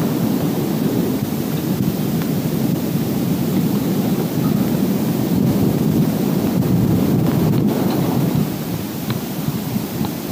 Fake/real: real